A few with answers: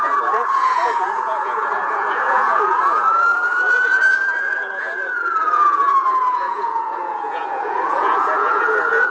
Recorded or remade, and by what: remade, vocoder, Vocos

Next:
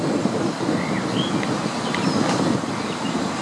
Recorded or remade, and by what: recorded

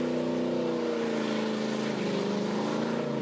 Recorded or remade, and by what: recorded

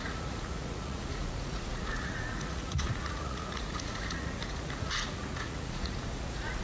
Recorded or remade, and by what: remade, vocoder, Vocos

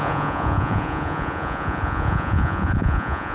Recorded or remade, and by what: remade, vocoder, Vocos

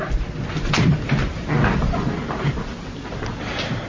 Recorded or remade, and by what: recorded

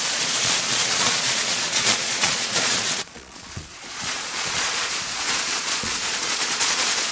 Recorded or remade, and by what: remade, vocoder, Vocos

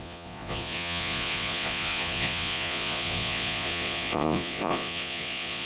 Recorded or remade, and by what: remade, vocoder, Vocos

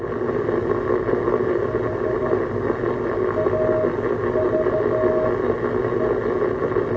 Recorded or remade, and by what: recorded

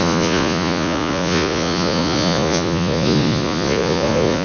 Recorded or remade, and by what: remade, vocoder, Vocos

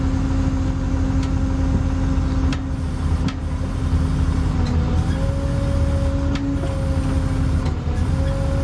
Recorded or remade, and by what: recorded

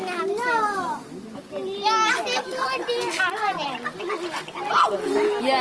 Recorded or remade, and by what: recorded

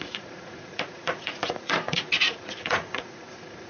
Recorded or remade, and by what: remade, vocoder, Vocos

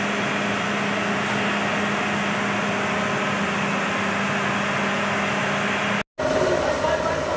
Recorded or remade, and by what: recorded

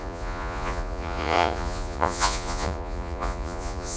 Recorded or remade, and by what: remade, vocoder, Vocos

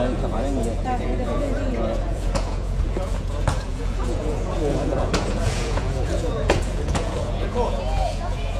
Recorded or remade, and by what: remade, vocoder, Vocos